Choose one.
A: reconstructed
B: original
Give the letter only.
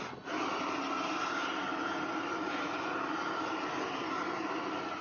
B